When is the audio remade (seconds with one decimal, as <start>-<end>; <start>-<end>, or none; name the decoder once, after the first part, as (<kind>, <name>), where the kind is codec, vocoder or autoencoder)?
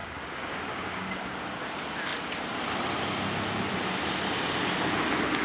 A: 0.0-1.3 (codec, DAC)